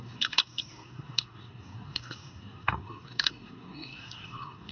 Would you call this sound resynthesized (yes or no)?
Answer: yes